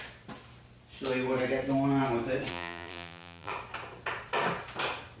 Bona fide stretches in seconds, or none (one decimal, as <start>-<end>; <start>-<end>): 0.0-2.5; 3.5-5.2